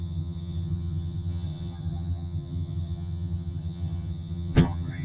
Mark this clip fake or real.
fake